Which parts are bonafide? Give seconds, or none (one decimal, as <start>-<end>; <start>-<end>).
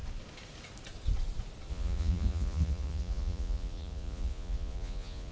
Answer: 0.0-1.7